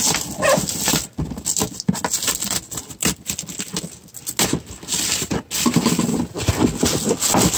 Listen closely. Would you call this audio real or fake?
real